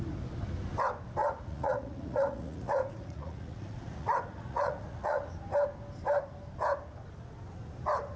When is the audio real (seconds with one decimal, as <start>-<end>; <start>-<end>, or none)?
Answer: 0.0-1.2; 5.3-8.2